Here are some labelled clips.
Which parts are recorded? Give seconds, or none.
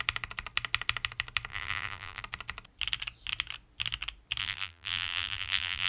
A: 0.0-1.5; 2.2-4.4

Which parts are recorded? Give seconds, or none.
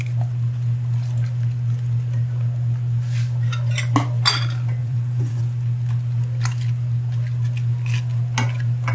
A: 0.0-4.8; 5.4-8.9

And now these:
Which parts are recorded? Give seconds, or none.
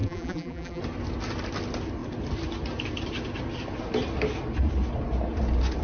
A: 0.8-5.8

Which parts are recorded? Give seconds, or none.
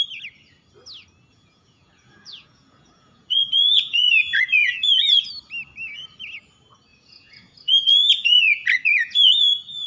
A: 0.0-1.3; 5.3-6.9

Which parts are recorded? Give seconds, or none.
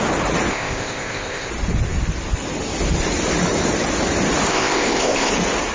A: 0.0-0.5; 1.5-4.5; 5.3-5.7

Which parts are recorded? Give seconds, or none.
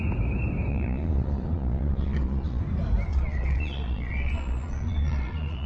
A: 0.0-0.7; 2.6-3.1